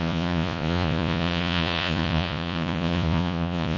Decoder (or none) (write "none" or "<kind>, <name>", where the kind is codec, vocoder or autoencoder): vocoder, Vocos